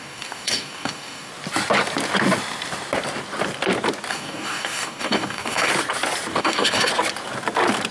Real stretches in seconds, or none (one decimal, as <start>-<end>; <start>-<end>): 1.3-4.1; 5.7-6.4; 6.9-7.9